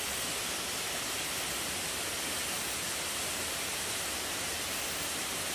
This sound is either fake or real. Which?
real